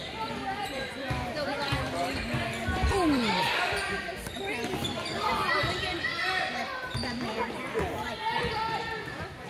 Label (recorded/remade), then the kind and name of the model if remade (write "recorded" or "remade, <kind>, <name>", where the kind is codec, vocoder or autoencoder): remade, vocoder, BigVGAN v2